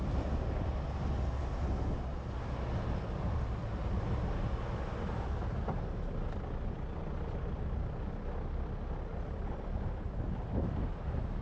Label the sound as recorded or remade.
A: recorded